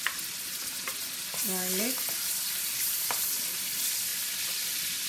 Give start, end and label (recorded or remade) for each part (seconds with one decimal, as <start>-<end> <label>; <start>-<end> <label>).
0.0-5.1 recorded